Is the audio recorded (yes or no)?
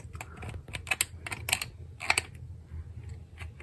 yes